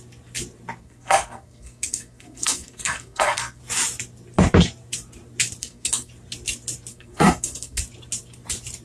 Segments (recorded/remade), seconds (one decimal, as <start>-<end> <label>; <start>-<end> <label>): 0.0-0.8 recorded; 0.8-3.6 remade; 3.6-5.6 recorded; 5.6-6.1 remade; 6.1-6.9 recorded; 6.9-7.8 remade; 7.8-8.8 recorded